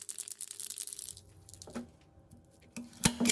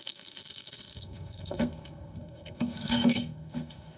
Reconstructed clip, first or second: second